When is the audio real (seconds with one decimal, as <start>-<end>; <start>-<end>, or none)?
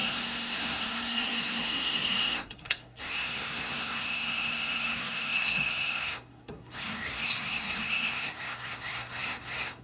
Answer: none